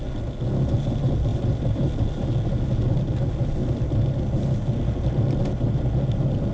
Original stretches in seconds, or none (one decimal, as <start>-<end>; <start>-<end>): 0.0-1.3; 1.9-6.5